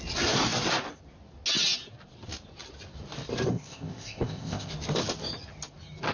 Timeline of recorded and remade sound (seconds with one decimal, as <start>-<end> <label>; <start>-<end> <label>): 0.0-3.5 recorded; 3.5-4.7 remade; 4.7-6.1 recorded

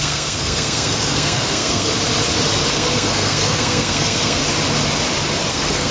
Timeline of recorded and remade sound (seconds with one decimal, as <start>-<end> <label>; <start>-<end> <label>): 0.0-1.9 remade; 1.9-2.7 recorded; 2.7-4.4 remade; 4.4-5.5 recorded; 5.5-5.9 remade

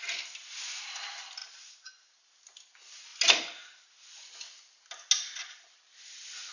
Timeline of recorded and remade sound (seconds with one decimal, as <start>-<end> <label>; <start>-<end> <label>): 0.0-1.4 recorded; 1.4-2.3 remade; 2.3-6.5 recorded

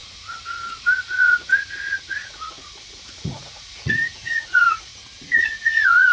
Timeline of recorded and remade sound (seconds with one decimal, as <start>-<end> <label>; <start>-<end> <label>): 0.0-4.9 remade; 4.9-5.4 recorded; 5.4-6.1 remade

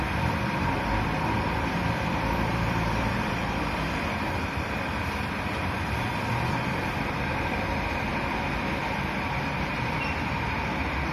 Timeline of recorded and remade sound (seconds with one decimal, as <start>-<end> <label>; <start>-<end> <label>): 0.0-11.1 remade